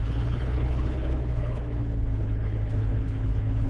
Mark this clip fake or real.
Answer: fake